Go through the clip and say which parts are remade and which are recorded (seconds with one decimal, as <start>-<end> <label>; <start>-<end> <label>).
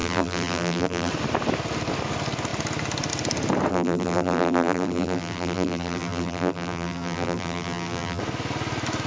0.0-1.1 remade; 1.1-3.7 recorded; 3.7-8.2 remade; 8.2-9.1 recorded